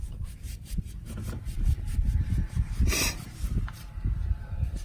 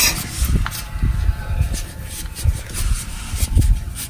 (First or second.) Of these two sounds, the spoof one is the first